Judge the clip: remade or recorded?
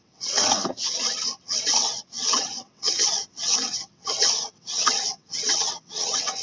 remade